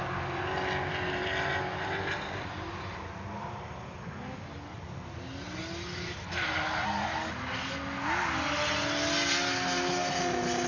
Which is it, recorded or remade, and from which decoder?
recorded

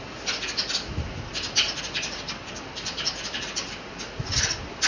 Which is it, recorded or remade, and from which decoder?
recorded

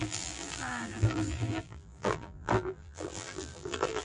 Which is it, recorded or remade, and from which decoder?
remade, vocoder, BigVGAN v2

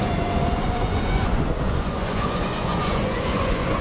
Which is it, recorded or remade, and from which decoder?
remade, vocoder, Vocos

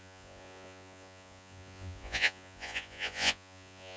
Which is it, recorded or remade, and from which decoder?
remade, vocoder, Vocos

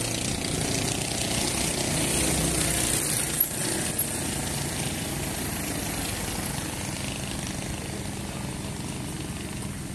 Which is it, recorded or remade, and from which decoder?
recorded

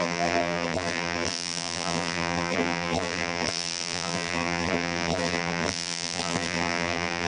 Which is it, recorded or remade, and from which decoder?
remade, vocoder, BigVGAN v2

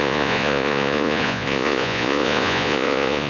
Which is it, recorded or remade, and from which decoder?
remade, vocoder, Vocos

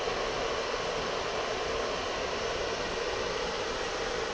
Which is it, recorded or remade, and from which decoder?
recorded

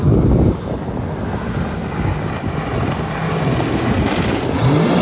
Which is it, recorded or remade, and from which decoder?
recorded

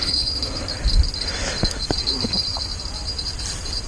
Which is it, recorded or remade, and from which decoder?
recorded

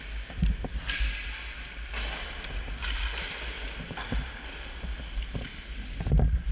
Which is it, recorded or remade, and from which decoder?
recorded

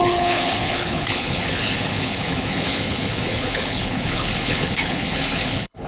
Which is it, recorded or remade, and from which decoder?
remade, codec, HILCodec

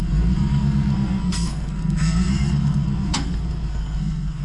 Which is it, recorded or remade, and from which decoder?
remade, codec, SNAC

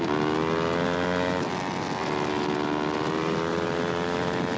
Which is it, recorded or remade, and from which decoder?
recorded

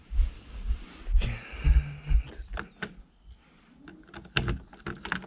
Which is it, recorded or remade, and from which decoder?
recorded